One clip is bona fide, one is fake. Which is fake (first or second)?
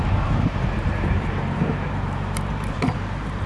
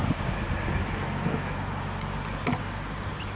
first